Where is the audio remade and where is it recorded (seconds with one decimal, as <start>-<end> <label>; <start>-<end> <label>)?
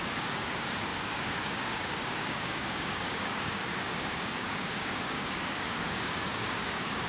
0.0-7.1 remade